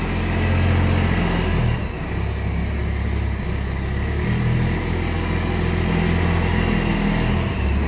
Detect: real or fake real